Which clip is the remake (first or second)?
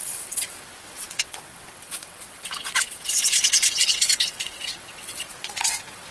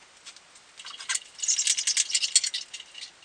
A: first